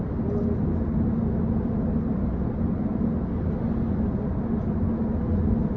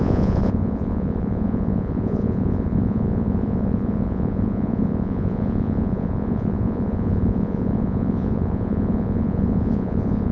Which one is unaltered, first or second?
first